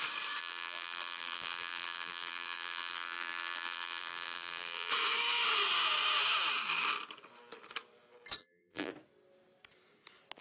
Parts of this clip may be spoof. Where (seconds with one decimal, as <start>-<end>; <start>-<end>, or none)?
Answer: 0.4-4.9; 8.4-8.9